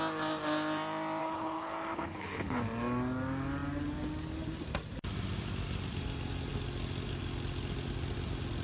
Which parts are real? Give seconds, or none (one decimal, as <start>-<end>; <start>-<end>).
0.0-1.2; 2.6-8.6